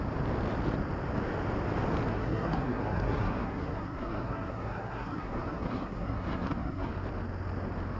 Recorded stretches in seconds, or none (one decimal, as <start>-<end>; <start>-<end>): 0.0-2.1; 6.9-8.0

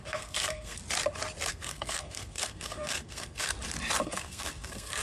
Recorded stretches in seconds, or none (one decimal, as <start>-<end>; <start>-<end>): 0.8-1.5; 3.5-4.0

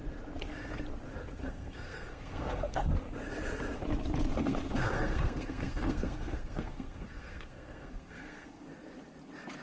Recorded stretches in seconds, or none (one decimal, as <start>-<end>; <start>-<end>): 0.0-1.4; 2.9-4.3; 8.6-9.6

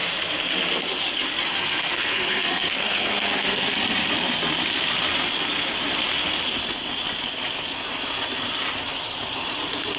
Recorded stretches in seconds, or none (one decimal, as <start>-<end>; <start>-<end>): 0.0-1.5; 3.7-10.0

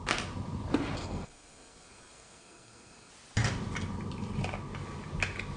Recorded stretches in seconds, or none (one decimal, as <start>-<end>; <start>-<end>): 0.0-1.0; 3.1-5.6